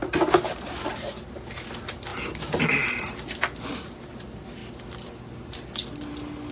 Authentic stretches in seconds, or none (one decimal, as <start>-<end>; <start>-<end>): 0.0-6.5